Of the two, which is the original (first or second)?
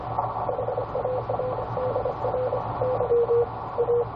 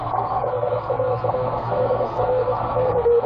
first